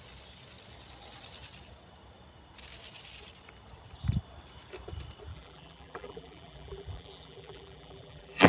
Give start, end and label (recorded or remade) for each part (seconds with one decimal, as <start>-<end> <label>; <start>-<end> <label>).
0.0-5.3 recorded; 5.3-8.5 remade